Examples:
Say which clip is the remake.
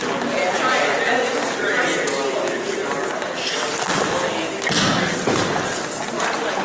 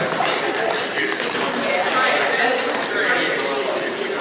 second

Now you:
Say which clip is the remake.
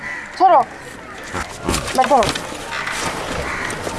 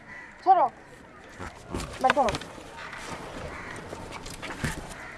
second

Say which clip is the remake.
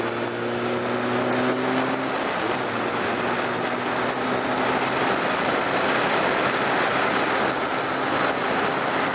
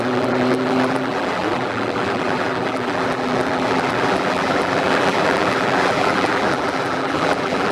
second